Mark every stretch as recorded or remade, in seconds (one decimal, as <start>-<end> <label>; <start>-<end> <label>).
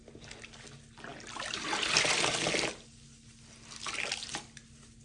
0.0-5.0 recorded